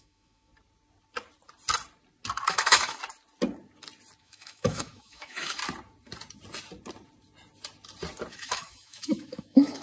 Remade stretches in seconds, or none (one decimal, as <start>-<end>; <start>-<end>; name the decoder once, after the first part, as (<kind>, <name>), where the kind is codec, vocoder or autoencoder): 0.0-0.5 (autoencoder, DAC-VAE); 2.5-3.0; 4.2-5.6; 8.3-9.8